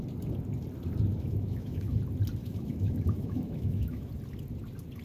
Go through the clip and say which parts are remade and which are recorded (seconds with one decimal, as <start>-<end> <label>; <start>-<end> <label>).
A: 0.0-1.1 recorded; 1.1-2.0 remade; 2.0-2.4 recorded; 2.4-4.1 remade; 4.1-5.0 recorded